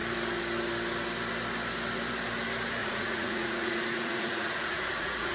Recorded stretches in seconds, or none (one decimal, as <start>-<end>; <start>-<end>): 0.0-2.8